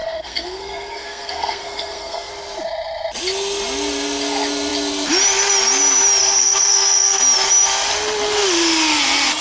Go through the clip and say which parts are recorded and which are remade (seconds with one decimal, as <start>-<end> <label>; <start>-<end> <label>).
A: 0.0-2.3 remade; 2.3-6.2 recorded; 6.2-7.2 remade; 7.2-9.4 recorded